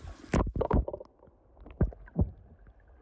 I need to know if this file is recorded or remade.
recorded